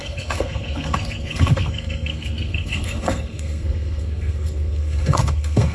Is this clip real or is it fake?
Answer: fake